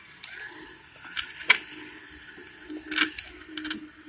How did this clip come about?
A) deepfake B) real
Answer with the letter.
A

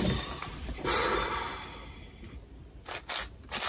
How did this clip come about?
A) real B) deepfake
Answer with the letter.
A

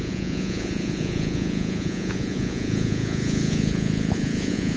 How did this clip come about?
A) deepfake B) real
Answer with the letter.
A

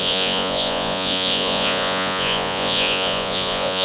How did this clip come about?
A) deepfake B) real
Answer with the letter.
A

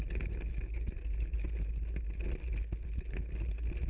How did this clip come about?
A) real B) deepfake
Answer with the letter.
A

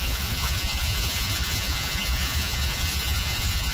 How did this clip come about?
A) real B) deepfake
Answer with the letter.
B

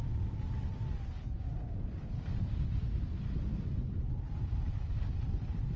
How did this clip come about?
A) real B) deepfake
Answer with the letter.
A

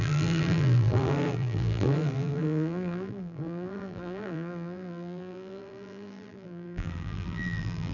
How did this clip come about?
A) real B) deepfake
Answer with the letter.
B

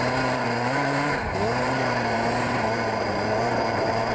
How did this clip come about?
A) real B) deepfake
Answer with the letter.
B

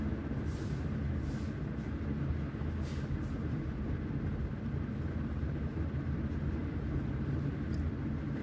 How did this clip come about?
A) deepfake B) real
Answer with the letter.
B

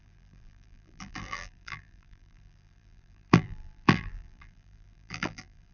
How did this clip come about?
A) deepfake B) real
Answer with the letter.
A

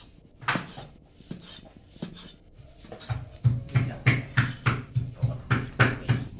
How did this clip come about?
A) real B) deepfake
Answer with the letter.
A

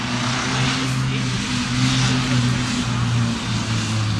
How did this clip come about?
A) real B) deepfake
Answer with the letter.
A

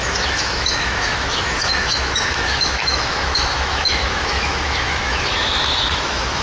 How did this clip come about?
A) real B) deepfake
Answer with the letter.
B